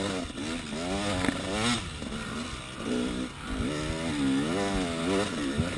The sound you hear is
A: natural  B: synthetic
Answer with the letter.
A